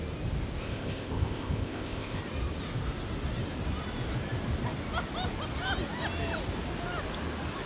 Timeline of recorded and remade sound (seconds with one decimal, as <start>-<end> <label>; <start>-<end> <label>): 0.0-0.6 recorded; 0.6-2.2 remade; 2.2-7.7 recorded